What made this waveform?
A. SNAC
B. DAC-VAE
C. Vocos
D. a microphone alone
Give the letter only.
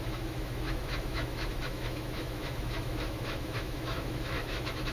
B